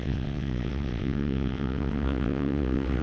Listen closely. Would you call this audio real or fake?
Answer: fake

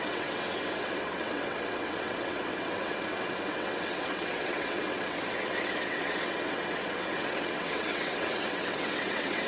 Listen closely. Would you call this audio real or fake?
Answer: fake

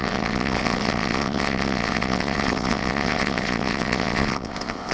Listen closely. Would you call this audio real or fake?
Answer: fake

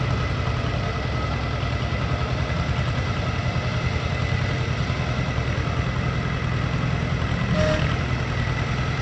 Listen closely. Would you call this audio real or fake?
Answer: real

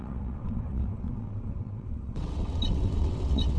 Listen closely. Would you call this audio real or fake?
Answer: fake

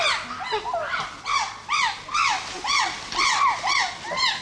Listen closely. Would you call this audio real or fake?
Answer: real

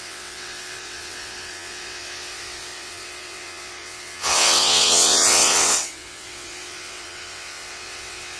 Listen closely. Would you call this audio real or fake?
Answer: fake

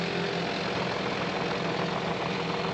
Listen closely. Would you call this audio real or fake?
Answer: real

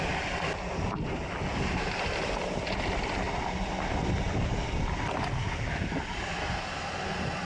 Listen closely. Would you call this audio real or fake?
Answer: real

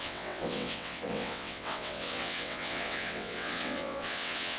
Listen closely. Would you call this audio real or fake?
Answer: fake